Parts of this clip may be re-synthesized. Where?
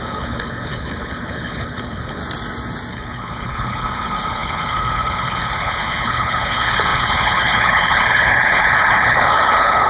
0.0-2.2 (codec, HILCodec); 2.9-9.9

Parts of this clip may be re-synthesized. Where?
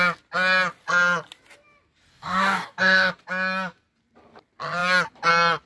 2.1-3.1 (codec, DAC)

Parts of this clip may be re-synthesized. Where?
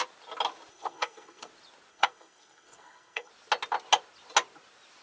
0.7-1.5 (codec, SNAC); 1.9-3.3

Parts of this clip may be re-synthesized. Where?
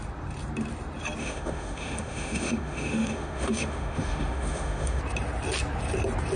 1.2-5.0 (autoencoder, DAC-VAE)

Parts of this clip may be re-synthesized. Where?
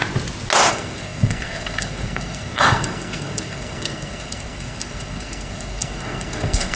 0.7-6.8 (codec, SNAC)